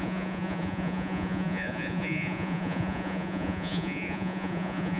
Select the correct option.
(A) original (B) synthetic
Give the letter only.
B